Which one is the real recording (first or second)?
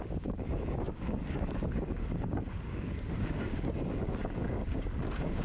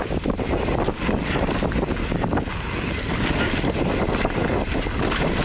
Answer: second